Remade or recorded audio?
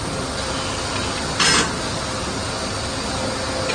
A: recorded